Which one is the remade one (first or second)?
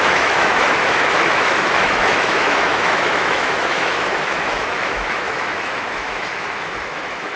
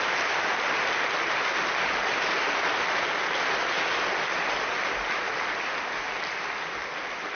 first